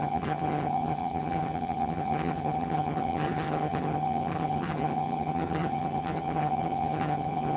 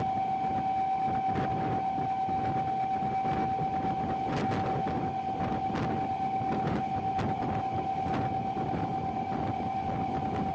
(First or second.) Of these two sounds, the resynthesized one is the first